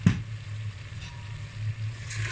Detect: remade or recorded recorded